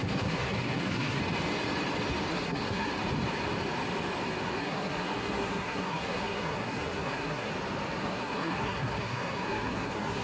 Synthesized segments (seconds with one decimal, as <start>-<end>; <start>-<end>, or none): 0.0-1.2; 2.3-2.9; 4.6-7.5; 8.0-10.2